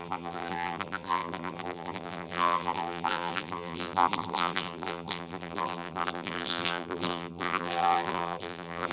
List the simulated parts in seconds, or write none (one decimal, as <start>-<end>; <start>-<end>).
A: 0.0-8.9